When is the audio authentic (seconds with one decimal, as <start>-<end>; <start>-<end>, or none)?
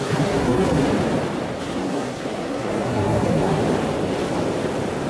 0.9-1.6; 3.6-5.1